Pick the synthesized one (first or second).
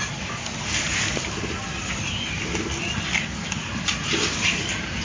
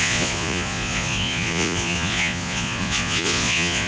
second